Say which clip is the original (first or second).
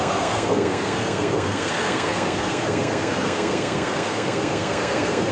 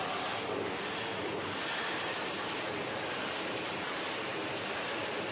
second